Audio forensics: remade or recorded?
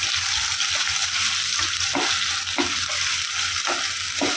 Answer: recorded